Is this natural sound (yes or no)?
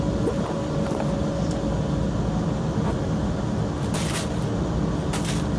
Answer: yes